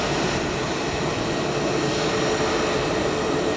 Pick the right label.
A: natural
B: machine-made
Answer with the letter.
A